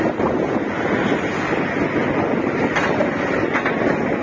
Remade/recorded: recorded